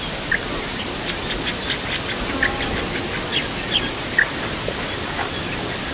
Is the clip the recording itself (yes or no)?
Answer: yes